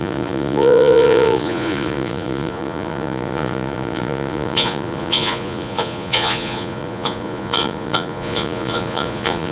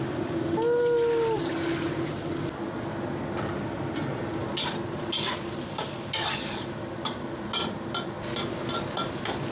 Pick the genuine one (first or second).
second